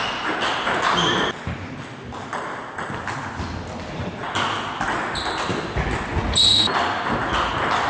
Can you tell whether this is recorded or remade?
recorded